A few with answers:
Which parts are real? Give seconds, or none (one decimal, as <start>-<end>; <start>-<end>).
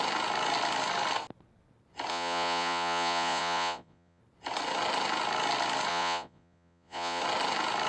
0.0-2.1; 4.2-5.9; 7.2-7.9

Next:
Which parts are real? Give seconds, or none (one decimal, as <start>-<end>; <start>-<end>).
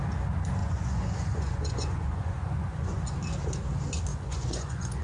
0.0-0.6; 3.0-4.1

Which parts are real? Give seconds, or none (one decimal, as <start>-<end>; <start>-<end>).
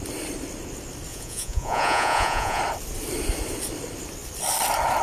0.0-1.1; 2.6-5.0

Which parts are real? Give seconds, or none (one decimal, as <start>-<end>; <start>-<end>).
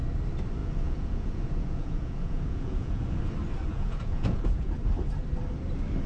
0.0-0.6; 3.2-3.7; 4.7-6.1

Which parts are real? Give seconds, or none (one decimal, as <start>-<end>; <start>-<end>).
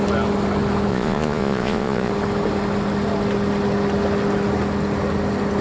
0.0-0.9; 2.1-5.6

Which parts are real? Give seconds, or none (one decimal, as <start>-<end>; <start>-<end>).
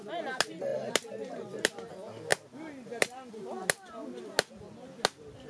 0.0-5.5